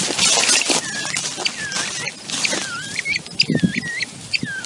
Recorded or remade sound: recorded